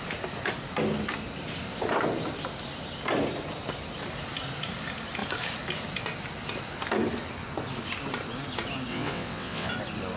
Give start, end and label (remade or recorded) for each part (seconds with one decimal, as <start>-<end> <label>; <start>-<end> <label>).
0.0-8.9 recorded; 8.9-9.7 remade; 9.7-10.2 recorded